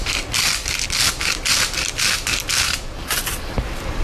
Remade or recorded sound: remade